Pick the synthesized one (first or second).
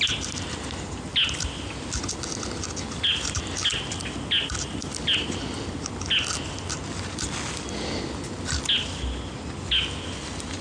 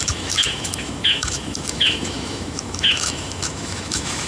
second